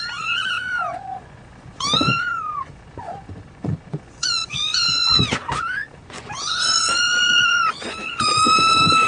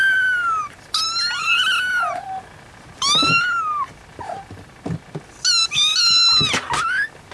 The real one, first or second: second